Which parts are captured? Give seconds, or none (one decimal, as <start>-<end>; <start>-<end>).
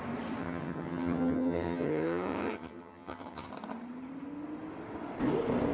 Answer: 0.0-0.4; 3.5-5.7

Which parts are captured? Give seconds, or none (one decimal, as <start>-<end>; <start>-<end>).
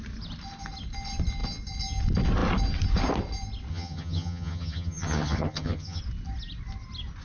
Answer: 0.0-3.7; 6.0-7.2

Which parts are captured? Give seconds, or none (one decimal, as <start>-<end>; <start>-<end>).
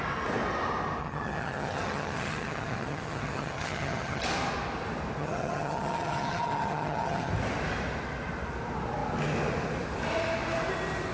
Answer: 0.0-1.0; 4.2-5.2; 7.3-11.1